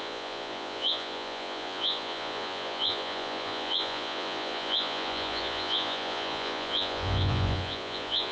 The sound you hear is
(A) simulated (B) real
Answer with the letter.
A